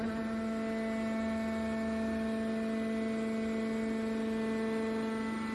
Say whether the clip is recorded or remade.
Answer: recorded